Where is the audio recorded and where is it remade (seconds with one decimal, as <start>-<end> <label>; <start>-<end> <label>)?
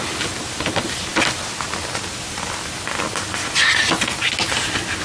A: 0.0-5.0 recorded